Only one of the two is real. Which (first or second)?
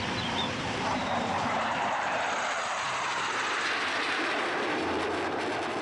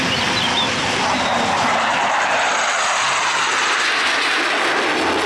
second